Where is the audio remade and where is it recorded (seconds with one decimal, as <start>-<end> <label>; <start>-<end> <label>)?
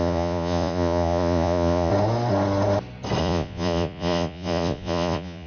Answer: 0.0-1.9 remade; 1.9-3.2 recorded; 3.2-5.5 remade